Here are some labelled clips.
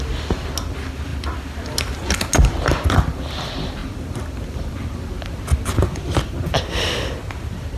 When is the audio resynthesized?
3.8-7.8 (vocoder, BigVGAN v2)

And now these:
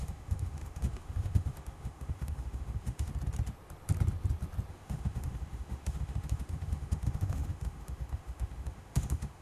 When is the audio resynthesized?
0.0-3.1 (autoencoder, DAC-VAE); 4.7-9.4